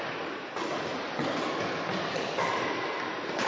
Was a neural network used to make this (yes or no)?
no